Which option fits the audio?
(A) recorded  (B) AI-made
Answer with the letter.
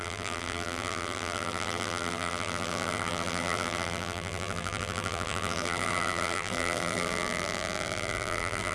B